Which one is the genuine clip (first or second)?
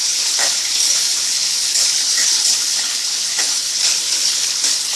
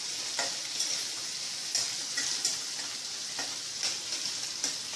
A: second